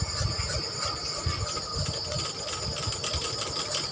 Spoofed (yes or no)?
no